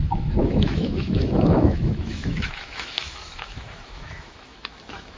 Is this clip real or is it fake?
fake